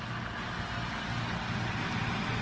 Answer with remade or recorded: recorded